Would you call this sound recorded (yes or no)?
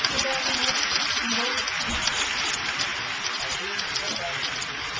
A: yes